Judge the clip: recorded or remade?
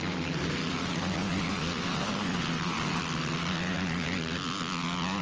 recorded